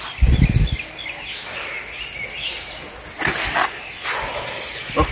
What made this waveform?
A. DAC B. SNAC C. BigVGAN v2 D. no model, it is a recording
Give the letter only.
D